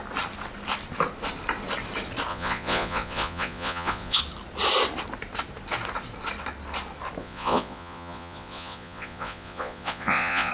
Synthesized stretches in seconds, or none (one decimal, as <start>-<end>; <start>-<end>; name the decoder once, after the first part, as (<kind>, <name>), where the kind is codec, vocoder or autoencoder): 2.3-4.2 (vocoder, Vocos); 7.2-10.5